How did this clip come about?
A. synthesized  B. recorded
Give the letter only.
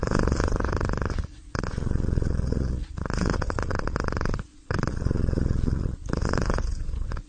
A